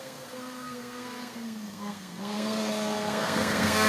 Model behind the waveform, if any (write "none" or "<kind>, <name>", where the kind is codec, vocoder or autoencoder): codec, SNAC